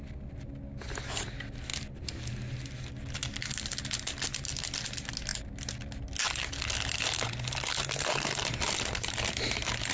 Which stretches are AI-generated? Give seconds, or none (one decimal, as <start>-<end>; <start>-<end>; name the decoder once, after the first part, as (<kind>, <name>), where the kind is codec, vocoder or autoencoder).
none